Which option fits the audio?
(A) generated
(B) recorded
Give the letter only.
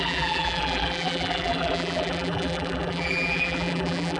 A